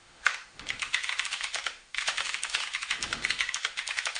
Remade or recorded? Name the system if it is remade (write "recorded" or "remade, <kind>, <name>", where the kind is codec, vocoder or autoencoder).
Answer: remade, autoencoder, DAC-VAE